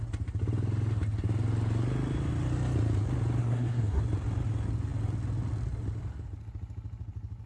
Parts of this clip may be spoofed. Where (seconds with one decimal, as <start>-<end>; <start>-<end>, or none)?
3.4-4.0